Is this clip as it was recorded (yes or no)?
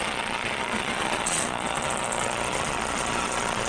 no